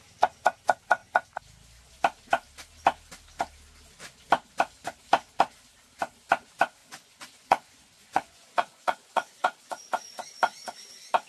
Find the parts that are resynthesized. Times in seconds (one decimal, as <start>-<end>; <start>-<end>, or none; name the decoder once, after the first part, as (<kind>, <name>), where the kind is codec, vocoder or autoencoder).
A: 6.8-9.8 (vocoder, Vocos)